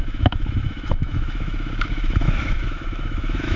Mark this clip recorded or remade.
remade